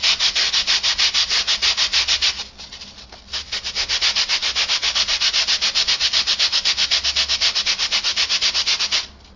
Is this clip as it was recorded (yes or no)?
yes